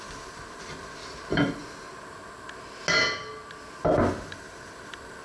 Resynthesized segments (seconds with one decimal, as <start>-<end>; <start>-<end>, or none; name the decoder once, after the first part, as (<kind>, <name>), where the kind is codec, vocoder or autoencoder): 0.0-1.6 (vocoder, BigVGAN v2); 3.8-5.2